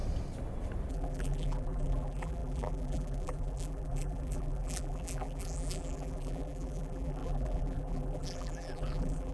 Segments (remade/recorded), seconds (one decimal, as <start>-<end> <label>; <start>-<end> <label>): 0.0-0.9 recorded; 0.9-9.3 remade